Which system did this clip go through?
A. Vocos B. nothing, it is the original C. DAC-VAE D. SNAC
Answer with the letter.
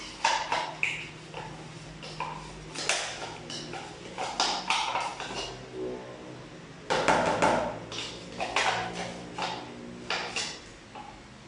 B